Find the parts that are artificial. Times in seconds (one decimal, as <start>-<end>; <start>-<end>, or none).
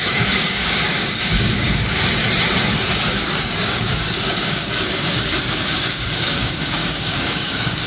0.0-2.2; 2.9-7.9